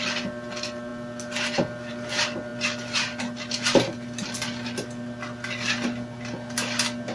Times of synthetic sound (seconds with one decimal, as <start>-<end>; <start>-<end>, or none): none